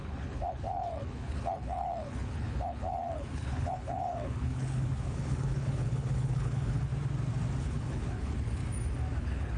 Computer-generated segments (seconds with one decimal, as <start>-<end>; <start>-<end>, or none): 0.0-6.9; 7.6-8.6; 9.2-9.6